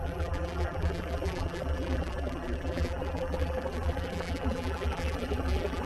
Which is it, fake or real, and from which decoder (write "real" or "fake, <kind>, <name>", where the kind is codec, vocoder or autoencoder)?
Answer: fake, vocoder, BigVGAN v2